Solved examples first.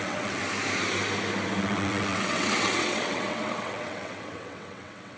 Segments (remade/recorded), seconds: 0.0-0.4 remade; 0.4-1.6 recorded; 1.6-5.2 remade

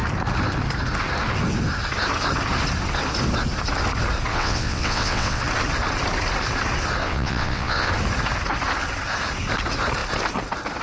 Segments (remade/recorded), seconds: 0.0-4.3 recorded; 4.3-5.4 remade; 5.4-7.0 recorded; 7.0-7.9 remade; 7.9-10.8 recorded

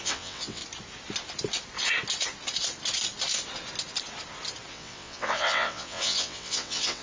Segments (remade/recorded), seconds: 0.0-0.6 remade; 0.6-4.7 recorded; 4.7-7.0 remade

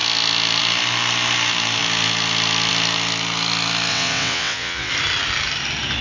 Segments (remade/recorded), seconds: 0.0-3.9 recorded; 3.9-4.9 remade; 4.9-6.0 recorded

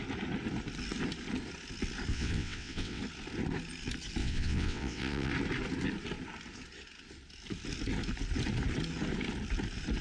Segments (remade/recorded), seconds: 0.0-2.1 recorded; 2.1-3.0 remade; 3.0-4.2 recorded; 4.2-5.3 remade; 5.3-10.0 recorded